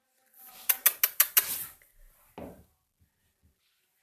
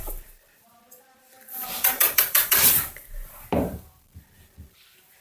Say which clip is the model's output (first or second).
second